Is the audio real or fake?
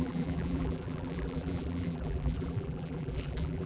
fake